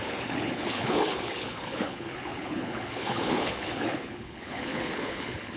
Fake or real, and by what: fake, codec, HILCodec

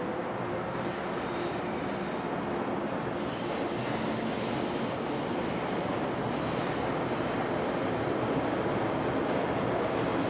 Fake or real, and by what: real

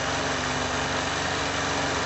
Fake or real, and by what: real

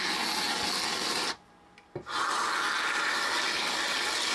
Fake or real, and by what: real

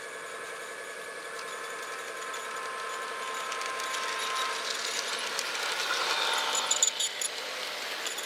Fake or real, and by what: real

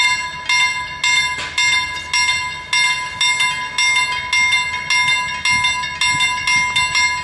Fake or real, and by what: real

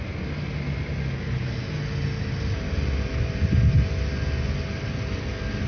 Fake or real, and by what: real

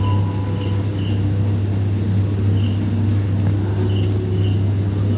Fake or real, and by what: real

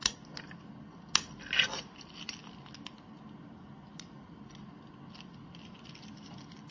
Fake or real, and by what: real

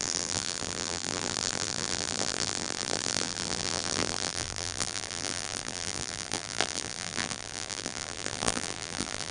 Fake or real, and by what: fake, vocoder, BigVGAN v2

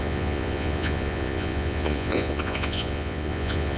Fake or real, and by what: fake, vocoder, Vocos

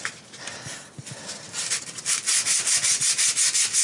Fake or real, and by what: real